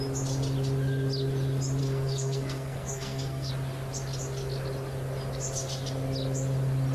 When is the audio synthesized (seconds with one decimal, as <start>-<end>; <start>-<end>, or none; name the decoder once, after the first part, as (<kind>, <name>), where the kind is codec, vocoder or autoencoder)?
1.8-3.5 (codec, SNAC)